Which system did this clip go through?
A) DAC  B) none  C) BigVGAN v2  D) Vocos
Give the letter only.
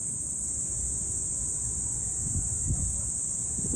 B